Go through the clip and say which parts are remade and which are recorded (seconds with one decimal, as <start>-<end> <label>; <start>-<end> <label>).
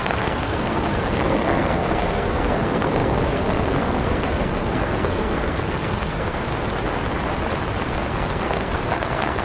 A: 0.0-6.5 remade; 6.5-7.8 recorded; 7.8-9.4 remade